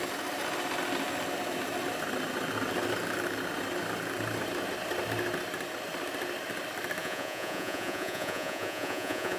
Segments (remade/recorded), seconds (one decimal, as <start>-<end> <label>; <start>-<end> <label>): 0.0-7.0 recorded; 7.0-9.4 remade